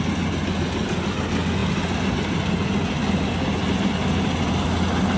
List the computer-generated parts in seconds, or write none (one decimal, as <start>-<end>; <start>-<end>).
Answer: none